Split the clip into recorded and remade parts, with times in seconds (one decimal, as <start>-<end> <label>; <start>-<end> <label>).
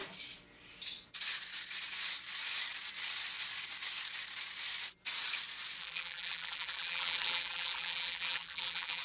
0.0-5.8 recorded; 5.8-9.0 remade